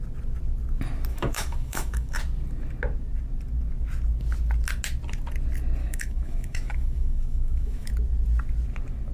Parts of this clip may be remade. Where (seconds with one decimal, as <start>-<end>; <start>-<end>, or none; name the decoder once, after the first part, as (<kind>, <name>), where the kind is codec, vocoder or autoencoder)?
1.1-2.2 (autoencoder, DAC-VAE); 5.8-7.9